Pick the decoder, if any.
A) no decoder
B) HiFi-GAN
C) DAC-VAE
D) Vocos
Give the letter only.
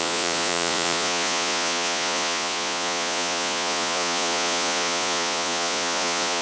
D